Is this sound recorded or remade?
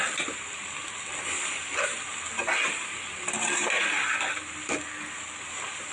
recorded